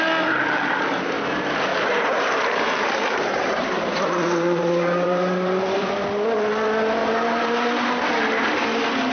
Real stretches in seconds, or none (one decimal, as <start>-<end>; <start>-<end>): 0.0-1.7; 5.9-7.0; 8.0-9.1